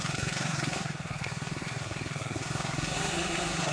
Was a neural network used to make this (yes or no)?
yes